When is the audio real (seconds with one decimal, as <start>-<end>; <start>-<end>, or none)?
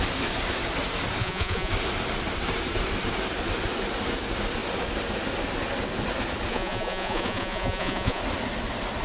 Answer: 0.0-1.2; 1.7-6.5; 8.2-9.0